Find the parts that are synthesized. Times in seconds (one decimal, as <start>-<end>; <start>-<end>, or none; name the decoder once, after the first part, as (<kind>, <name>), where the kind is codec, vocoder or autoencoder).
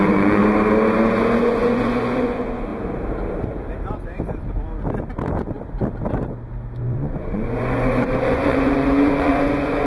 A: 0.0-0.4 (vocoder, Vocos); 1.4-2.7; 6.8-9.9